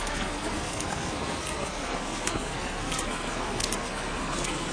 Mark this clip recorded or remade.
remade